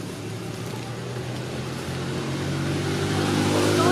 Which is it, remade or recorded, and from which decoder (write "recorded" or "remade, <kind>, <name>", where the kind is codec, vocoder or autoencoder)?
recorded